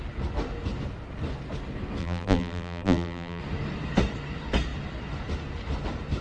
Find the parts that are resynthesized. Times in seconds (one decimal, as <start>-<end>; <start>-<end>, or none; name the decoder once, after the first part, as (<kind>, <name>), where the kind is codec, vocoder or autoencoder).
2.0-3.4 (vocoder, BigVGAN v2)